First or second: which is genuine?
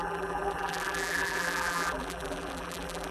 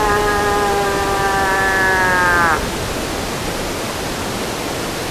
second